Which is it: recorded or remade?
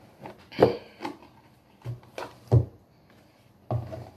recorded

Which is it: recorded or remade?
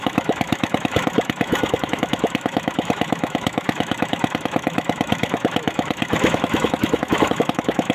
remade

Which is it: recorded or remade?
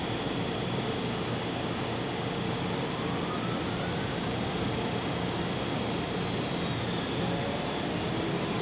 recorded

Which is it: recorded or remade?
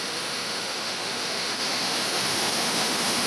remade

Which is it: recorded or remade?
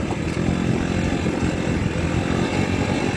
recorded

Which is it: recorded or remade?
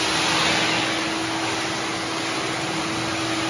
recorded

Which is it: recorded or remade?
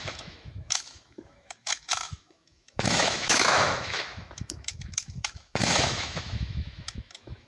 remade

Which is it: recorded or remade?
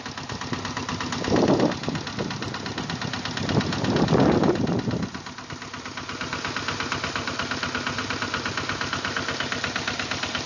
recorded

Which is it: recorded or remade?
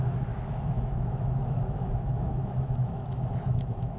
remade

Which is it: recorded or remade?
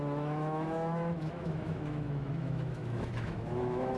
remade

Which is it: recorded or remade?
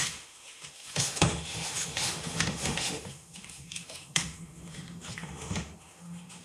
remade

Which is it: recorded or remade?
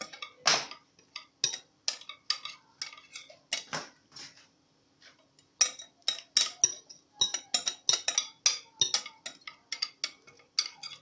recorded